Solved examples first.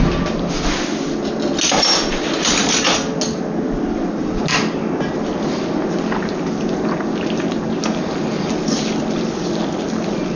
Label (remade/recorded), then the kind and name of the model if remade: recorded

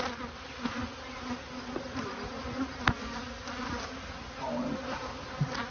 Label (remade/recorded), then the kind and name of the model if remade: recorded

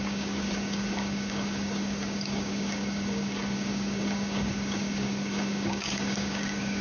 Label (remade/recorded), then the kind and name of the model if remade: remade, codec, DAC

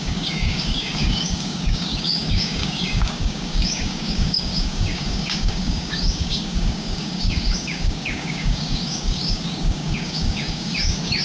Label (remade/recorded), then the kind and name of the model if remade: remade, codec, DAC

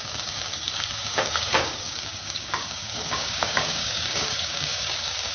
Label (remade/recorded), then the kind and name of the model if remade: remade, codec, DAC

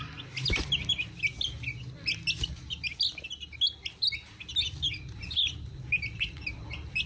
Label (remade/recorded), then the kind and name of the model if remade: recorded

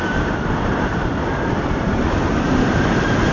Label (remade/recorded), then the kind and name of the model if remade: recorded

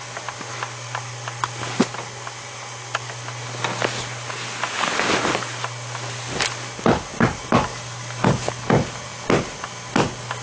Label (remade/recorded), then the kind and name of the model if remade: recorded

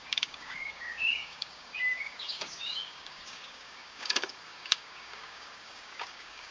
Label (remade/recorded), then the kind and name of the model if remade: remade, codec, DAC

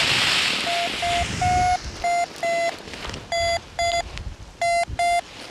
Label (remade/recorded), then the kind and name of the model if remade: recorded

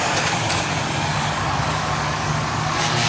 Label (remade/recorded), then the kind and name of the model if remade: remade, codec, DAC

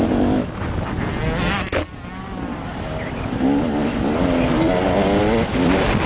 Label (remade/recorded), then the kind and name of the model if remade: recorded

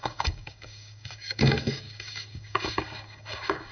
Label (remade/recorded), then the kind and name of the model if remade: remade, codec, DAC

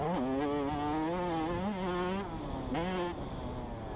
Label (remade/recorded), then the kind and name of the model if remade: recorded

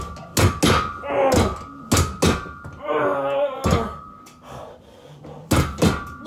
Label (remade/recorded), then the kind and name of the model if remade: recorded